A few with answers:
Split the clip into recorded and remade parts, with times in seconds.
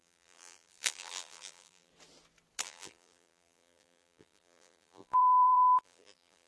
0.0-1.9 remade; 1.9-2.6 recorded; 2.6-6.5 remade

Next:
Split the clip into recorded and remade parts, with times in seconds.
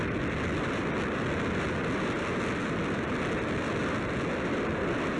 0.0-5.2 recorded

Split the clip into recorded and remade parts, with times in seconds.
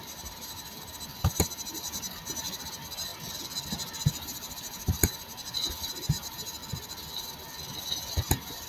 0.0-3.1 remade; 3.1-4.1 recorded; 4.1-6.6 remade; 6.6-7.8 recorded; 7.8-8.7 remade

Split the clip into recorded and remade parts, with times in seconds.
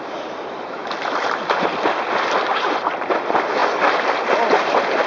0.0-0.8 remade; 0.8-2.5 recorded; 2.5-3.6 remade; 3.6-4.5 recorded; 4.5-5.1 remade